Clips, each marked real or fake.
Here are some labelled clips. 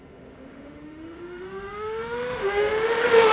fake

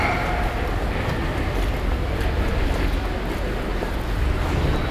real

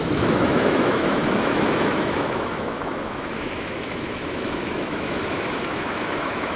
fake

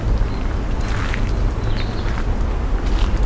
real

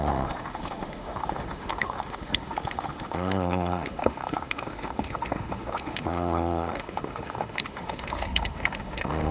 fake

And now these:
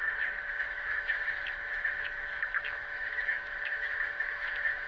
fake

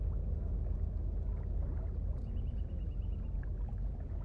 real